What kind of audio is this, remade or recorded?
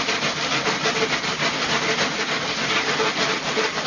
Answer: recorded